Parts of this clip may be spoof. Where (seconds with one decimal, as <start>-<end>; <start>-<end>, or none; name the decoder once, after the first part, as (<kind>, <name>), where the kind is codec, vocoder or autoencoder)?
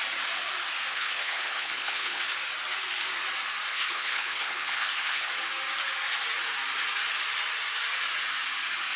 0.9-2.2 (codec, HILCodec); 3.7-5.3